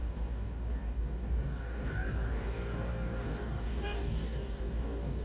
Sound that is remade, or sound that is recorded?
remade